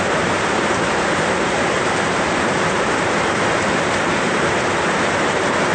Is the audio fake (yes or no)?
yes